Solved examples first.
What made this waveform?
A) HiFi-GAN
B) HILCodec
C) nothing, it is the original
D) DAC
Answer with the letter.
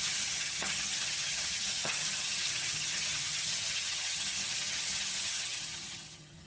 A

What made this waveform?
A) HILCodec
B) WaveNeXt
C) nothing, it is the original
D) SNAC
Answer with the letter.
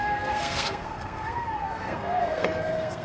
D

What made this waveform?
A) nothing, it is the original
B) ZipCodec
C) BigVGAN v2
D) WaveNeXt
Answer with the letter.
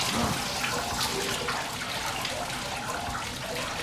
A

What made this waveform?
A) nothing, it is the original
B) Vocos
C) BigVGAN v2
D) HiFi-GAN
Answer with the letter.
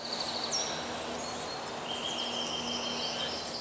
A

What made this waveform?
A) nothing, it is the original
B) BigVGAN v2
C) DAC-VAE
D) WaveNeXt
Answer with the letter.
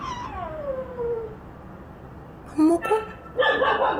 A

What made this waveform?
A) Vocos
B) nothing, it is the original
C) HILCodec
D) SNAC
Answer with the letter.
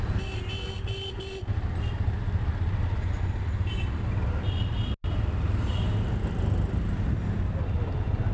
B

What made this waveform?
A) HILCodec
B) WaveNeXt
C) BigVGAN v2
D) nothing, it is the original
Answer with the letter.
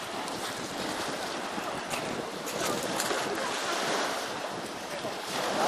D